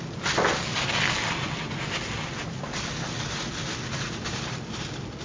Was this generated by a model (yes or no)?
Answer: no